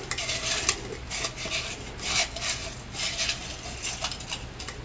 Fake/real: real